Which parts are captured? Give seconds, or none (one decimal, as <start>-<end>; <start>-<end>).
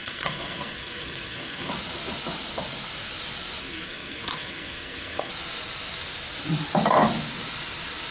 1.7-3.6; 5.3-8.1